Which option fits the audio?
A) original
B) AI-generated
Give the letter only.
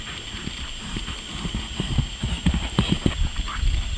A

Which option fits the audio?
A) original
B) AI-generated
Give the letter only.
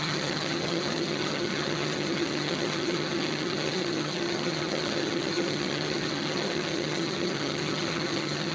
B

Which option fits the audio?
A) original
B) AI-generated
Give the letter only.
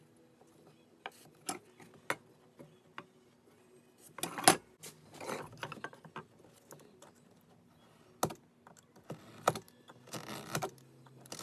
A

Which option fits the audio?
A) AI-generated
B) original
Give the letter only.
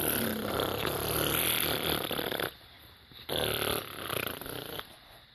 A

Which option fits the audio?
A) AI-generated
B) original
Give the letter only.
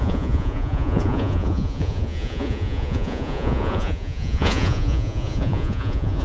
A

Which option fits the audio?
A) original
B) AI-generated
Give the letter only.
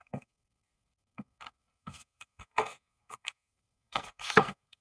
B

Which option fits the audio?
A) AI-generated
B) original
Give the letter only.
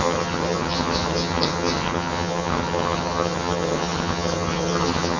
A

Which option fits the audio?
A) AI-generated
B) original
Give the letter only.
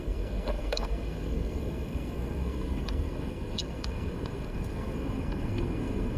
A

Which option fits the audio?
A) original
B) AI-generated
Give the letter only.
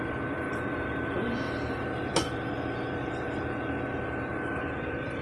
B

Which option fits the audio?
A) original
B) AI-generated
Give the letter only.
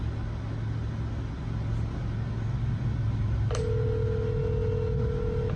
A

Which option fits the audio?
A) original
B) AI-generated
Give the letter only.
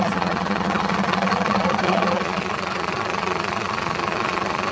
B